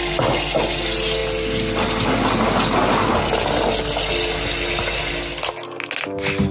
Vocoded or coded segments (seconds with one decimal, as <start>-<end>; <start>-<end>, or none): none